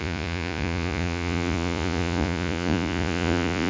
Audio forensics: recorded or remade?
remade